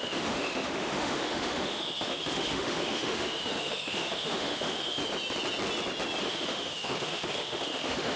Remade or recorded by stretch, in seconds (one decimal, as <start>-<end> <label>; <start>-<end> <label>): 0.0-5.0 remade; 5.0-6.2 recorded; 6.2-8.2 remade